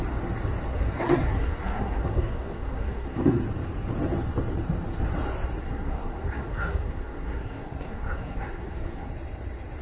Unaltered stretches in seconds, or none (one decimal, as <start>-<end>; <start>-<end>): 0.0-0.7; 3.4-5.6; 9.1-9.8